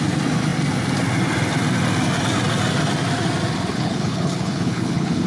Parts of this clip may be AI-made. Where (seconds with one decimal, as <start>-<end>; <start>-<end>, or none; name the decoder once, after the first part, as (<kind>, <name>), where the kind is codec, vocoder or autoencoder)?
3.7-5.3 (codec, HILCodec)